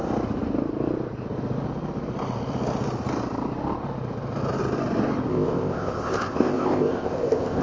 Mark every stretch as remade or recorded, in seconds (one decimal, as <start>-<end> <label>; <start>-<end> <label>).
0.0-5.3 recorded; 5.3-7.6 remade